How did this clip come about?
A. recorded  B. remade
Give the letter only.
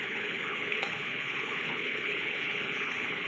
B